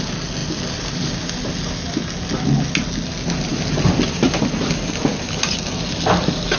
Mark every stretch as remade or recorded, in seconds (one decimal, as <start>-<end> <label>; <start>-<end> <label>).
0.0-0.4 recorded; 0.4-1.1 remade; 1.1-3.5 recorded; 3.5-6.6 remade